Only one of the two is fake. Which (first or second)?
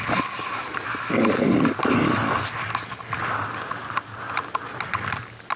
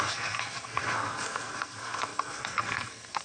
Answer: second